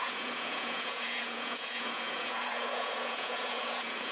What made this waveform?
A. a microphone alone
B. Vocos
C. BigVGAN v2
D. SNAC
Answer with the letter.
B